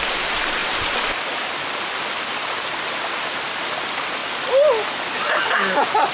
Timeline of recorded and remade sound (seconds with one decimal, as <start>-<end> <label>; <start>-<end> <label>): 0.0-6.1 recorded